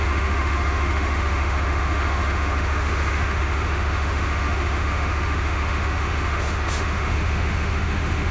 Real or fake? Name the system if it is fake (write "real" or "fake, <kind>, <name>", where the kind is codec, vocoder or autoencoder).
fake, autoencoder, DAC-VAE